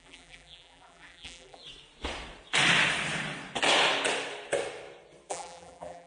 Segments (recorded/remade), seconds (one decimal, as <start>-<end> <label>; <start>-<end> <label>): 0.0-1.6 remade; 1.6-5.3 recorded; 5.3-6.1 remade